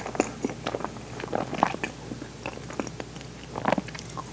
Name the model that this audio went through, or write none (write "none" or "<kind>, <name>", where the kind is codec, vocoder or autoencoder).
none